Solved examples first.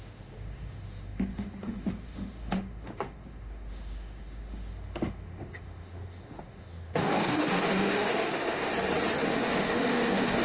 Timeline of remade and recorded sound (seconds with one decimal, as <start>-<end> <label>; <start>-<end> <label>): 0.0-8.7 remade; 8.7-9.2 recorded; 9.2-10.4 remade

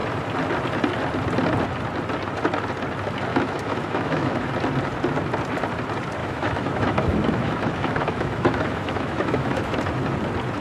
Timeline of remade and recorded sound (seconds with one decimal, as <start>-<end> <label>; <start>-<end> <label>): 0.0-3.3 recorded; 3.3-4.5 remade; 4.5-6.2 recorded; 6.2-9.7 remade; 9.7-10.6 recorded

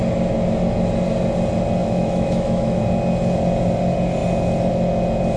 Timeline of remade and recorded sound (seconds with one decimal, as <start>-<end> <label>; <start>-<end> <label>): 0.0-1.8 recorded; 1.8-2.8 remade; 2.8-5.4 recorded